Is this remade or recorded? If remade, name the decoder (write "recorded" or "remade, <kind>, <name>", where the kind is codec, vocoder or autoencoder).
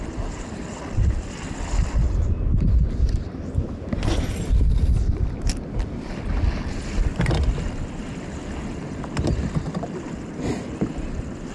recorded